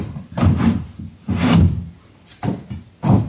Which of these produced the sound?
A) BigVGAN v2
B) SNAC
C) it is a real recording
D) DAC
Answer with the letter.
C